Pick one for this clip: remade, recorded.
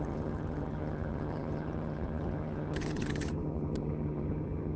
remade